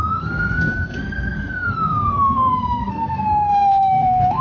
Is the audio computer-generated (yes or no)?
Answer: yes